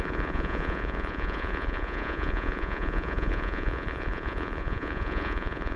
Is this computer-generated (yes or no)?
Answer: yes